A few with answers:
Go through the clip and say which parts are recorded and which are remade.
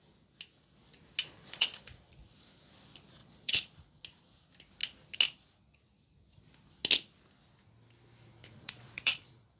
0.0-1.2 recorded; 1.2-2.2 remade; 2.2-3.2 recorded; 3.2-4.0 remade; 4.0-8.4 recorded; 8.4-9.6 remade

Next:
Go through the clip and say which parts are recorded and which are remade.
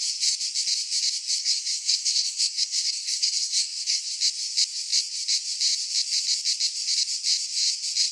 0.0-1.4 recorded; 1.4-4.0 remade; 4.0-8.1 recorded